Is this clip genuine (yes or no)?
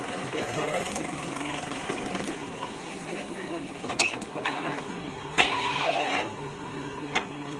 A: no